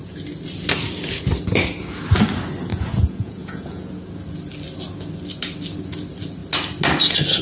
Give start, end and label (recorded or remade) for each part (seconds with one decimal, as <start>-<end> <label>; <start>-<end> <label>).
0.0-2.7 recorded; 2.7-3.9 remade; 3.9-7.4 recorded